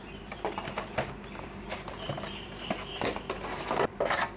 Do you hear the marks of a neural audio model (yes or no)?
yes